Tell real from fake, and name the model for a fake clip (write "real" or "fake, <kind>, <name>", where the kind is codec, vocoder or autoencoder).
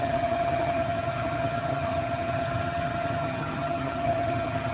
fake, vocoder, HiFi-GAN